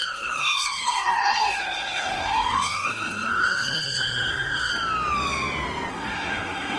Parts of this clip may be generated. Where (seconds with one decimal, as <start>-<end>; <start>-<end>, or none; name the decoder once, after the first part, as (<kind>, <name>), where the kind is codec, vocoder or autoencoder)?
0.0-4.7 (codec, SNAC); 5.9-6.8